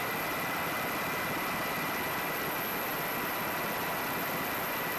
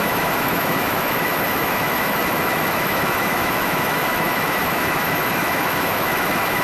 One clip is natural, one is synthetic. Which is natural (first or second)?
first